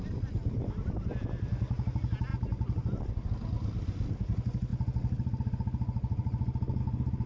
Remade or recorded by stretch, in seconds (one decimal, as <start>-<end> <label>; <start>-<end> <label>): 0.0-7.3 recorded